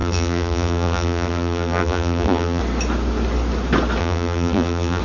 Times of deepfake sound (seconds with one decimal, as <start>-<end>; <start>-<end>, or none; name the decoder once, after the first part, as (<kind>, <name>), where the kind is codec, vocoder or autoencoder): 0.0-2.6 (vocoder, BigVGAN v2); 4.0-5.0